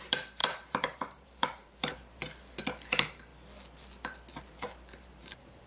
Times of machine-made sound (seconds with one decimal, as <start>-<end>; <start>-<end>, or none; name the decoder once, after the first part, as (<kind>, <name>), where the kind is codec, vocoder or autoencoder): 0.0-2.2 (vocoder, BigVGAN v2); 2.7-3.3; 4.4-5.7